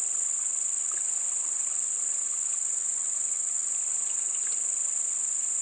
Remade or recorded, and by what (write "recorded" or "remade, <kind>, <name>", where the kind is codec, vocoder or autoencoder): recorded